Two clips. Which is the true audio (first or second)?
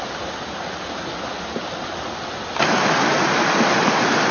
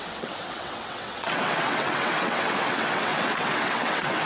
first